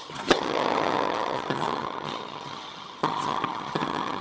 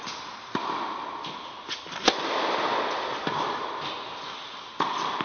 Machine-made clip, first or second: first